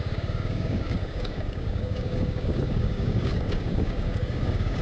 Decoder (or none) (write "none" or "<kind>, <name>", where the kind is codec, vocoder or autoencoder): codec, DAC